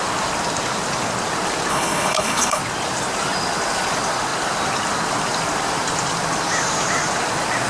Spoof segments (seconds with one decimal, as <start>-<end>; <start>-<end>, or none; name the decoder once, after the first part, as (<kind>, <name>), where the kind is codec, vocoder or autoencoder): 1.7-2.6 (codec, HILCodec)